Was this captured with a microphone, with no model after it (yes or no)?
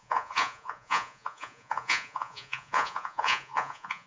no